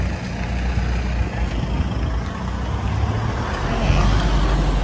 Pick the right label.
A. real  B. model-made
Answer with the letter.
A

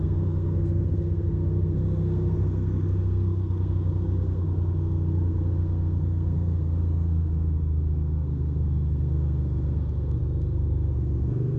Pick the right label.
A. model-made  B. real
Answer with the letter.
A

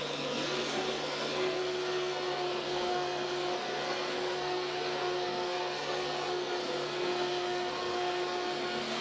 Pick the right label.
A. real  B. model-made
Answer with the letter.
B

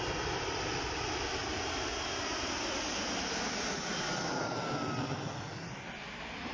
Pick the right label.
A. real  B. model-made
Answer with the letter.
A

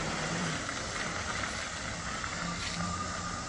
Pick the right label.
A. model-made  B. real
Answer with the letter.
B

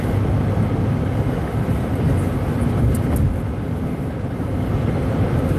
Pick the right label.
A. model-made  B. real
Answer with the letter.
B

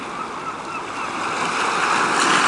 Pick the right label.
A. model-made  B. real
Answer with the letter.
B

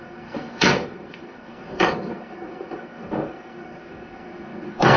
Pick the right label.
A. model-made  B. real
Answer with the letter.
A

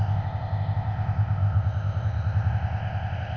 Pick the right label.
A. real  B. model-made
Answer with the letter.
B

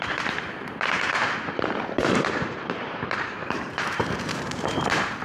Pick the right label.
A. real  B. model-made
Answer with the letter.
B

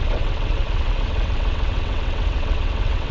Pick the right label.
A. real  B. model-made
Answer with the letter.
B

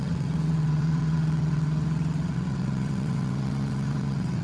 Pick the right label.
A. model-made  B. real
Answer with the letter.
A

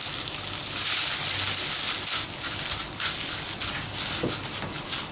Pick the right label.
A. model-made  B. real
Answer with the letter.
B